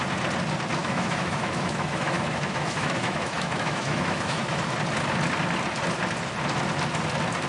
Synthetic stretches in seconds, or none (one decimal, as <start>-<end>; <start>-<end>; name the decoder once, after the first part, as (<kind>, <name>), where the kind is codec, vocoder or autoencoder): 0.8-4.6 (autoencoder, DAC-VAE)